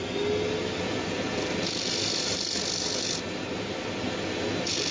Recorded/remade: recorded